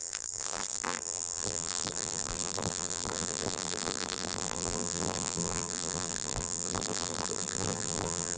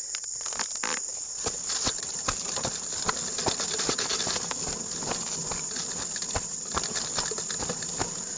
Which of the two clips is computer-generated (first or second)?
first